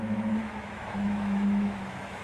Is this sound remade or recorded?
remade